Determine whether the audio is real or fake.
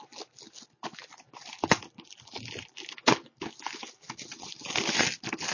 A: real